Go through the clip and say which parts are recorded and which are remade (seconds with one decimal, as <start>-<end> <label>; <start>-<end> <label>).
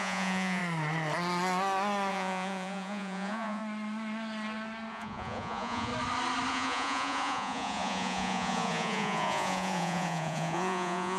0.0-0.6 remade; 0.6-2.1 recorded; 2.1-3.6 remade; 3.6-4.9 recorded; 4.9-5.9 remade; 5.9-6.5 recorded; 6.5-11.2 remade